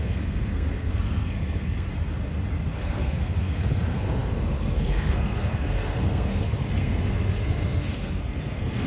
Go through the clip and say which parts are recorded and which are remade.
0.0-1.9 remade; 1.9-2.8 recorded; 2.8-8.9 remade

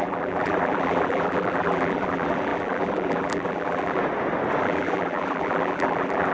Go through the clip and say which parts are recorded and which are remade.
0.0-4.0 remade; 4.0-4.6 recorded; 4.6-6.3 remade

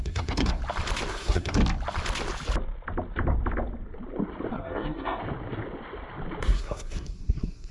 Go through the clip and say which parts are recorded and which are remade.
0.0-0.6 remade; 0.6-1.1 recorded; 1.1-1.6 remade; 1.6-4.5 recorded; 4.5-5.2 remade; 5.2-6.4 recorded; 6.4-7.7 remade

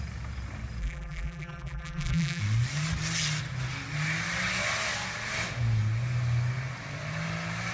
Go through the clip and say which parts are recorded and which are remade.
0.0-0.8 recorded; 0.8-2.4 remade; 2.4-7.7 recorded

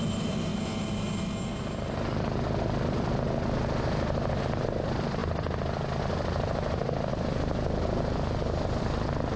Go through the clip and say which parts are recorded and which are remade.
0.0-0.5 remade; 0.5-4.4 recorded; 4.4-5.2 remade; 5.2-6.0 recorded; 6.0-7.1 remade; 7.1-8.8 recorded; 8.8-9.4 remade

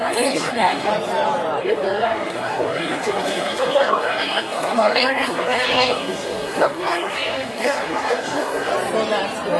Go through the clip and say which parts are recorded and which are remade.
0.0-0.9 remade; 0.9-1.6 recorded; 1.6-8.7 remade; 8.7-9.6 recorded

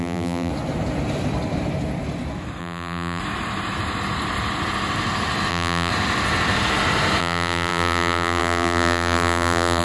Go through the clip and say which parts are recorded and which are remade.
0.0-0.5 remade; 0.5-2.6 recorded; 2.6-3.2 remade; 3.2-5.5 recorded; 5.5-5.9 remade; 5.9-7.2 recorded; 7.2-9.8 remade